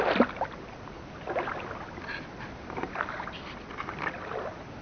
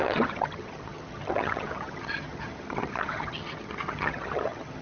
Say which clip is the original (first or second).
first